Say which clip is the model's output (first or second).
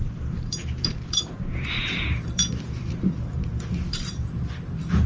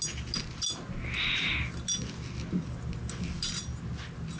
first